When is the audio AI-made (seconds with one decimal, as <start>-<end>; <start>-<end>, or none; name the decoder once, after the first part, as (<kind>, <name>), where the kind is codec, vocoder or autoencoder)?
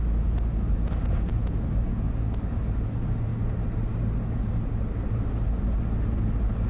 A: none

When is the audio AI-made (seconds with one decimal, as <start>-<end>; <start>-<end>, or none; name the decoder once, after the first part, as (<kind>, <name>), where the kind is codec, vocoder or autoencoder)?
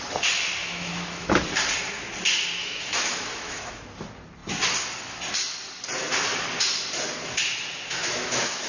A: 0.6-1.3 (autoencoder, DAC-VAE); 2.6-3.8; 8.0-8.7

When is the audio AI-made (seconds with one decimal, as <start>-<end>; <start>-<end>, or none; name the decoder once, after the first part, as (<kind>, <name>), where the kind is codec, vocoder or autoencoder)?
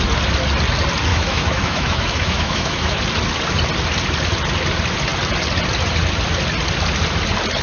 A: 1.1-3.0 (autoencoder, DAC-VAE)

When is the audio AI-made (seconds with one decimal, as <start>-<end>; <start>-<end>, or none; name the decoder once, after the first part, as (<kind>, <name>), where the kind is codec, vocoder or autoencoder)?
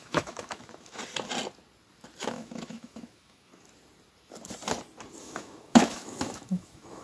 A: 0.0-1.0 (autoencoder, DAC-VAE); 2.2-3.5; 5.2-7.0